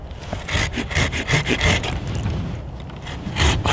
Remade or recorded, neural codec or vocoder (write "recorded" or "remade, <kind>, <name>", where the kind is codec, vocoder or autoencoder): remade, vocoder, BigVGAN v2